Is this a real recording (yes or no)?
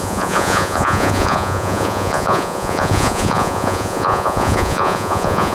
no